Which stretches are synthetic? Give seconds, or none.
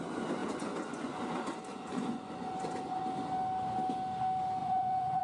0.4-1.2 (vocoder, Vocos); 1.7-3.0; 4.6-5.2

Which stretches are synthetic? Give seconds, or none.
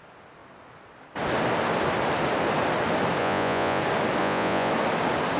3.2-3.8 (vocoder, Vocos); 4.2-4.7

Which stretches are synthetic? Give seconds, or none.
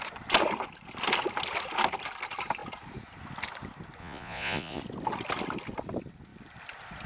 4.0-4.8 (vocoder, Vocos)